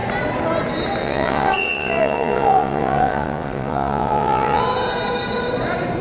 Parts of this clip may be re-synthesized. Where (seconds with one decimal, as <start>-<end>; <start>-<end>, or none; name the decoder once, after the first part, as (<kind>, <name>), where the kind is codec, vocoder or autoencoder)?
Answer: 1.0-4.6 (vocoder, WaveNeXt)